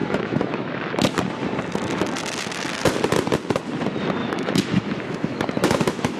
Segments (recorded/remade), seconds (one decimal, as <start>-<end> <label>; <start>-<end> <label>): 0.0-0.9 remade; 0.9-4.2 recorded; 4.2-6.2 remade